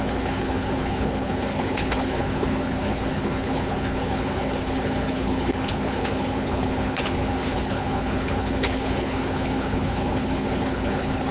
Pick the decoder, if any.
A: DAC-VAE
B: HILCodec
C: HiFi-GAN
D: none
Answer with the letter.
B